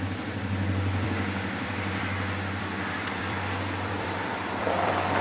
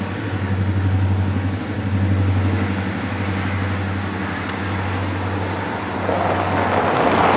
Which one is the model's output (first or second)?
first